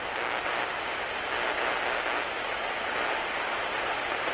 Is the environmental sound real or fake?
real